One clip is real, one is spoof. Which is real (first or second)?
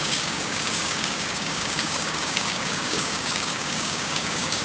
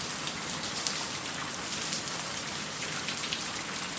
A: second